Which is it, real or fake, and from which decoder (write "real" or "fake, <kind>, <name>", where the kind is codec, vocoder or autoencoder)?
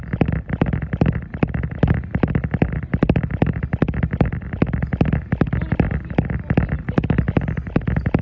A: real